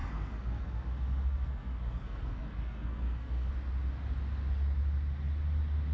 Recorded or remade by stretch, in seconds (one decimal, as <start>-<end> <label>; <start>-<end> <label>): 0.0-3.5 remade; 3.5-5.9 recorded